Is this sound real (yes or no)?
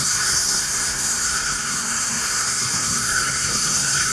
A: no